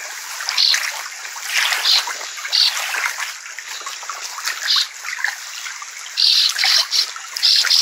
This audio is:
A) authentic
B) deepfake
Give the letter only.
A